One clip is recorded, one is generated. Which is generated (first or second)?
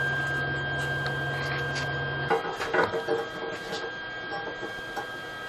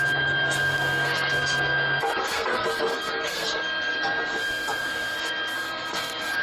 second